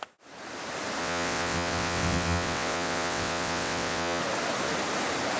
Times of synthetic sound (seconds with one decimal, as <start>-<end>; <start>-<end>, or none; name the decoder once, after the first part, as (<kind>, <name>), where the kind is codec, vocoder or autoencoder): 1.0-4.2 (vocoder, WaveNeXt)